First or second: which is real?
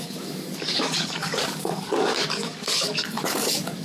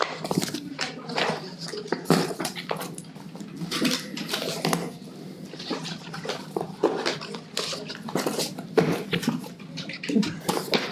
second